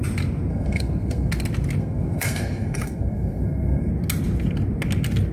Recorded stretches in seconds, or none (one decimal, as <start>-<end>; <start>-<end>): 0.0-0.5; 1.3-1.8; 3.9-5.3